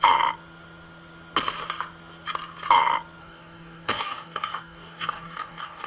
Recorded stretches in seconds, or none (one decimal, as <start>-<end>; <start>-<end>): 0.0-3.2